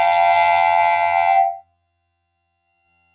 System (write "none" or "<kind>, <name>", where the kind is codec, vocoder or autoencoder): vocoder, HiFi-GAN